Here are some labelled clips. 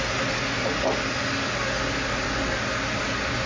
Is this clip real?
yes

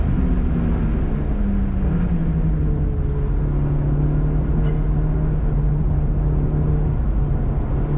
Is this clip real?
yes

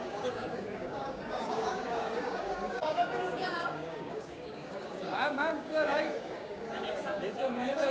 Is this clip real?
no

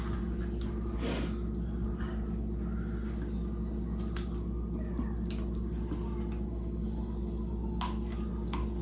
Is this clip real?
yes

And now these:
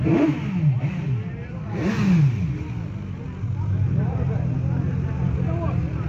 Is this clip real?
yes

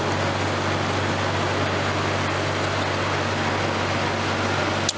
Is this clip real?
yes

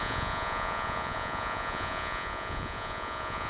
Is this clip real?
no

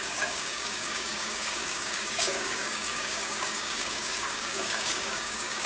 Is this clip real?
no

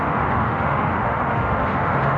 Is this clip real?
no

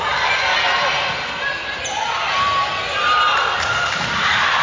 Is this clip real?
yes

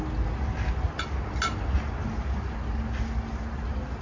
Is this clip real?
yes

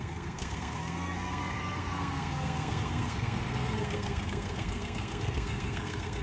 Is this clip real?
no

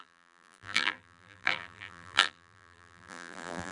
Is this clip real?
no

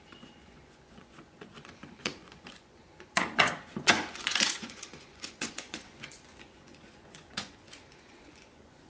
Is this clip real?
no